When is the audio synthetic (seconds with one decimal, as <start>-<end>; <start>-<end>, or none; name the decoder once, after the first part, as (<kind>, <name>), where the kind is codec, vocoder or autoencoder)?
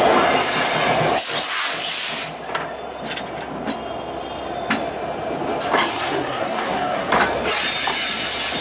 5.9-7.1 (codec, SNAC)